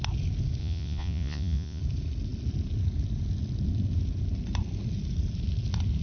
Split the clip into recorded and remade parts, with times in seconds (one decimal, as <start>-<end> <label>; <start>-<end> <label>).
0.0-0.6 recorded; 0.6-1.8 remade; 1.8-6.0 recorded